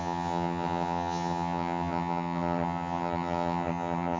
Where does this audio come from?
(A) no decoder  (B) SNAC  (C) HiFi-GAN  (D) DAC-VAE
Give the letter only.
C